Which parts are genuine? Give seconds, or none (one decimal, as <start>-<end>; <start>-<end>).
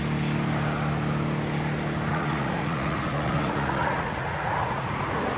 0.0-2.1